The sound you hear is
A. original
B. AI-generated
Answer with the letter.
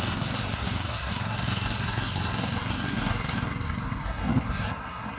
B